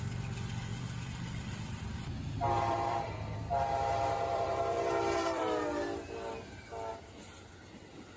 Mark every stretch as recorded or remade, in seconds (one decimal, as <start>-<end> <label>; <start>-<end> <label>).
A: 0.0-0.7 recorded; 0.7-3.5 remade; 3.5-4.3 recorded; 4.3-5.4 remade; 5.4-8.2 recorded